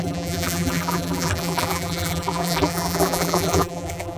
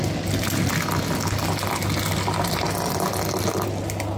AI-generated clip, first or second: first